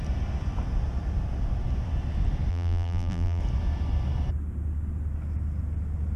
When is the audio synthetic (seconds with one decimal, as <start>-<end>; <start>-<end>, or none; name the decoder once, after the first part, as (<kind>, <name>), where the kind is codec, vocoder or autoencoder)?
2.5-3.4 (vocoder, BigVGAN v2)